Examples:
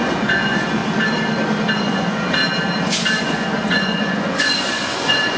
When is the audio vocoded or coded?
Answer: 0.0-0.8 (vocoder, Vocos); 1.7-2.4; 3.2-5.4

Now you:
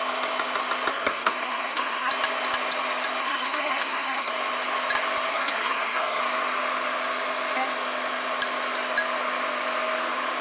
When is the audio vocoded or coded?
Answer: 0.9-2.1 (codec, SNAC); 3.2-4.3; 5.3-6.2